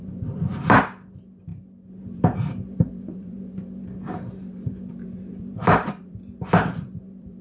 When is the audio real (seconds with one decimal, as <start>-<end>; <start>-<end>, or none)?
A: none